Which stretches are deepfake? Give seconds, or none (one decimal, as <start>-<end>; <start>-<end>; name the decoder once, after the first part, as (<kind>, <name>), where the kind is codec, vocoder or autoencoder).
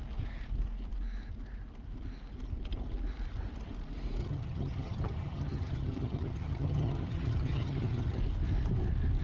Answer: 4.2-8.2 (vocoder, HiFi-GAN)